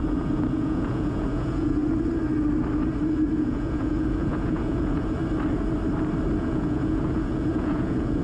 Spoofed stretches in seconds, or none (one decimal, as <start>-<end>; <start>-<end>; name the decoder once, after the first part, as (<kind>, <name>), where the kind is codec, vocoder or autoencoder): 0.0-1.8 (vocoder, Vocos); 3.4-5.2; 6.4-8.2